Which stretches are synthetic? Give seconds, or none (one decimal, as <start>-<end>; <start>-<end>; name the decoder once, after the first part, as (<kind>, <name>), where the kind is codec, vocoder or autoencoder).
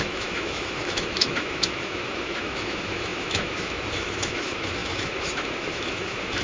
0.0-6.4 (autoencoder, DAC-VAE)